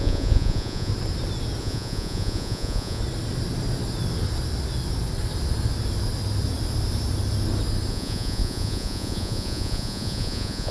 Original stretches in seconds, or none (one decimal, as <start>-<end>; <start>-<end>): 0.9-1.6; 3.0-7.9